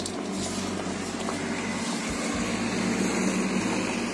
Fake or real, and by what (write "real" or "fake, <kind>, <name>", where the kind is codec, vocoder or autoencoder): real